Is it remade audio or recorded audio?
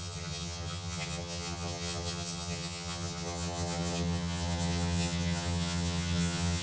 remade